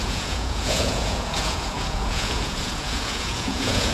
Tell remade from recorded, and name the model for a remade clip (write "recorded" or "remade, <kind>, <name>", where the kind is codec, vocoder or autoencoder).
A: remade, vocoder, Vocos